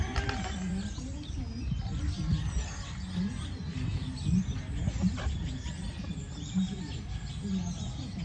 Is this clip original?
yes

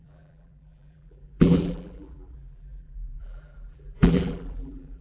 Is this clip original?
no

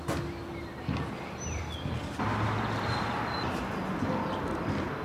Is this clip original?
yes